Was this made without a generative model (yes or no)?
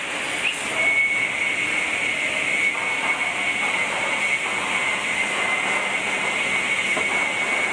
yes